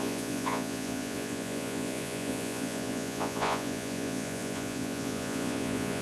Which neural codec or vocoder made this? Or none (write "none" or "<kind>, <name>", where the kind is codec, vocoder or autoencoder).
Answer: vocoder, Vocos